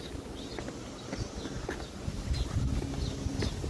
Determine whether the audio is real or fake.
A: real